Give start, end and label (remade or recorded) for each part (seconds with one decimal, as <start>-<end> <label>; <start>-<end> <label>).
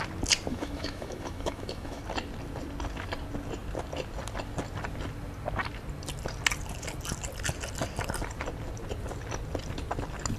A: 0.0-0.5 recorded; 0.5-2.0 remade; 2.0-10.4 recorded